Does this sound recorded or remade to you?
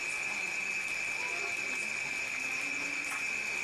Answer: recorded